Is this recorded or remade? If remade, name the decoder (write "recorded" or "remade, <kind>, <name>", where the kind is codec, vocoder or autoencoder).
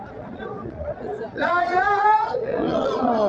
remade, vocoder, Vocos